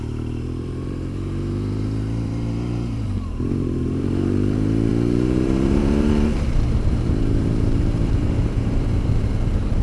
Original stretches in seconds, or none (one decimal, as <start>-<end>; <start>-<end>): none